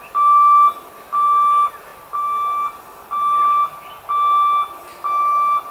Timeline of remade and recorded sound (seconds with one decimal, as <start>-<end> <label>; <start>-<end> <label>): 0.0-5.7 recorded